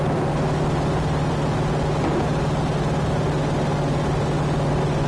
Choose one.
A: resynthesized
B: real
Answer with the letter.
B